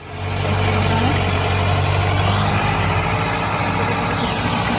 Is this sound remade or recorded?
recorded